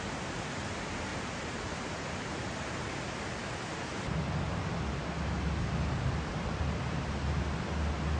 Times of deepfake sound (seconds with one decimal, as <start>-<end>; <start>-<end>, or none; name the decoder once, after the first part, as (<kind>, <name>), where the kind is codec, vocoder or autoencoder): 1.1-4.7 (vocoder, BigVGAN v2)